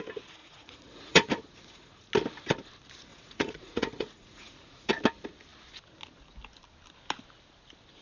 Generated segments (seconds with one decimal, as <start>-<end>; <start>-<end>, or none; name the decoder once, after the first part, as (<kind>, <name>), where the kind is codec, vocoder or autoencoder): 0.4-2.1 (vocoder, Vocos); 3.1-4.9